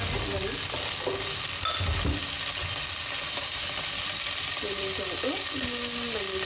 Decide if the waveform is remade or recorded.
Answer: recorded